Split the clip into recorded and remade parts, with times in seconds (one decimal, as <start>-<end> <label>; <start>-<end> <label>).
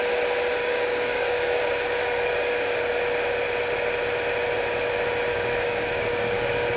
0.0-0.6 recorded; 0.6-1.6 remade; 1.6-2.0 recorded; 2.0-2.8 remade; 2.8-5.3 recorded; 5.3-6.8 remade